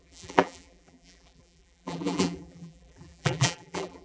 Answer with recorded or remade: remade